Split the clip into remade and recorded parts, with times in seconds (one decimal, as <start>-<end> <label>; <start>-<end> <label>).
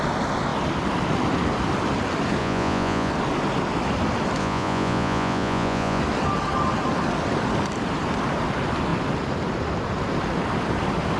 0.0-2.4 recorded; 2.4-3.1 remade; 3.1-4.4 recorded; 4.4-6.0 remade; 6.0-11.2 recorded